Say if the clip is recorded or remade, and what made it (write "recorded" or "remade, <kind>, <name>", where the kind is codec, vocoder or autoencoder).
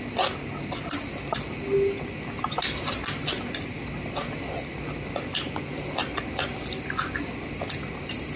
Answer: recorded